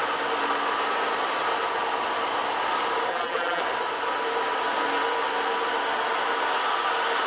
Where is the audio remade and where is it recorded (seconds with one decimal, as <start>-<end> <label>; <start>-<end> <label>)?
0.0-3.1 recorded; 3.1-3.6 remade; 3.6-7.3 recorded